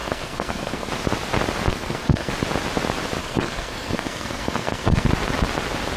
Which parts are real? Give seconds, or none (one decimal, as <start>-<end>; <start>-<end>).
0.9-1.7; 2.3-3.2; 5.1-6.0